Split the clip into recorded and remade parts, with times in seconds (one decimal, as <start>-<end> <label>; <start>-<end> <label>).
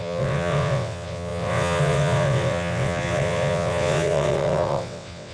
0.0-5.3 remade